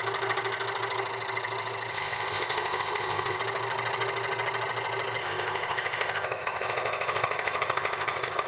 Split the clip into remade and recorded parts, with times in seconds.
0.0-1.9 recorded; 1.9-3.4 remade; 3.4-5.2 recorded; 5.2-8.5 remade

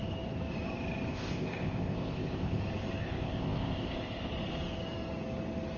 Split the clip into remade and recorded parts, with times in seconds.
0.0-1.1 recorded; 1.1-2.6 remade; 2.6-3.0 recorded; 3.0-4.3 remade; 4.3-5.8 recorded

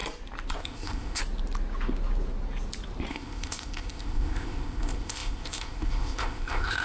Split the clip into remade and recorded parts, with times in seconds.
0.0-0.6 recorded; 0.6-1.2 remade; 1.2-3.1 recorded; 3.1-6.8 remade

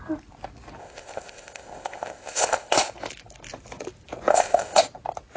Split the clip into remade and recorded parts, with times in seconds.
0.0-0.8 recorded; 0.8-2.9 remade; 2.9-4.3 recorded; 4.3-4.8 remade; 4.8-5.4 recorded

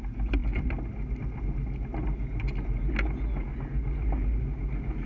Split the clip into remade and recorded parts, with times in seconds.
0.0-5.1 recorded

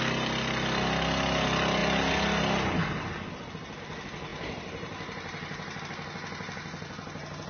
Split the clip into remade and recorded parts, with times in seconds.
0.0-7.5 recorded

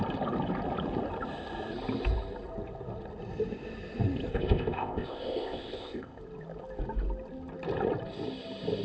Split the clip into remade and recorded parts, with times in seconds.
0.0-4.3 recorded; 4.3-6.2 remade; 6.2-8.8 recorded